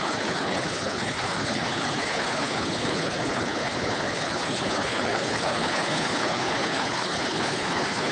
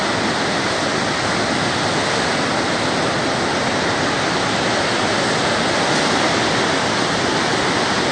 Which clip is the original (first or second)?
second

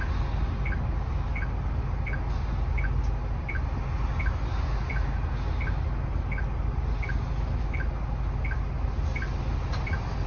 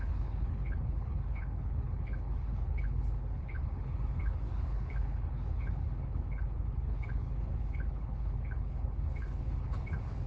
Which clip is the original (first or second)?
first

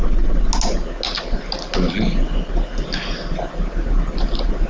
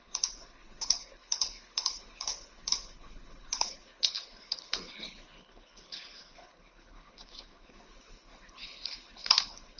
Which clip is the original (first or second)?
first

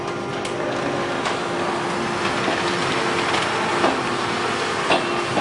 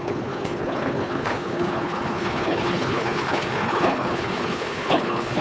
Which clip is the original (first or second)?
first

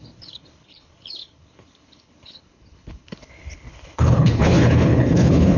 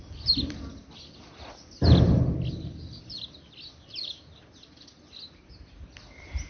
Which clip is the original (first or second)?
second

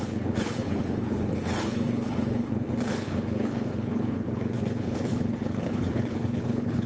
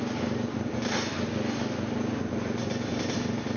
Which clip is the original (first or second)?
second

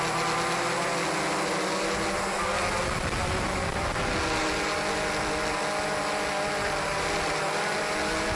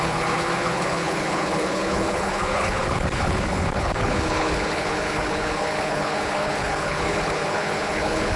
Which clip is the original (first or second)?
first